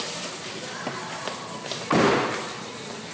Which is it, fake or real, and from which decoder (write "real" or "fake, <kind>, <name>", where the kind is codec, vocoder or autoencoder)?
real